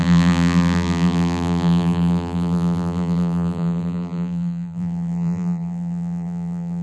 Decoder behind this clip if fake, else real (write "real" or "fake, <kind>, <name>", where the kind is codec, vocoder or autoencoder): fake, vocoder, BigVGAN v2